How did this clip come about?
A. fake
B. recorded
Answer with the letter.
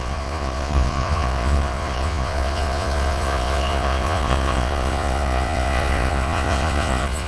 A